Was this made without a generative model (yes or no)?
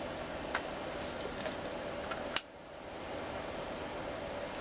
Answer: yes